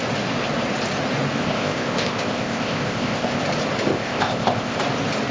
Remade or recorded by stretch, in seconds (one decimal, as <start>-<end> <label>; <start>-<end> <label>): 0.0-1.4 recorded; 1.4-3.4 remade; 3.4-3.9 recorded; 3.9-4.8 remade; 4.8-5.3 recorded